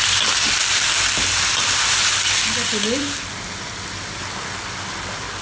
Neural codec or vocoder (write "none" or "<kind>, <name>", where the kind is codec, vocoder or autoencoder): none